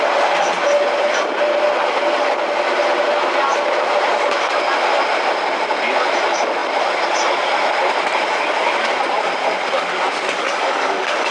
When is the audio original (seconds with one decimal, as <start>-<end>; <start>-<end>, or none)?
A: 0.0-10.4